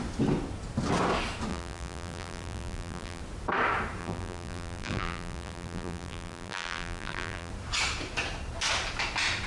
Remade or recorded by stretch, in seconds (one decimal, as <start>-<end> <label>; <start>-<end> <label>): 0.0-1.5 recorded; 1.5-3.2 remade; 3.2-4.0 recorded; 4.0-7.5 remade; 7.5-9.5 recorded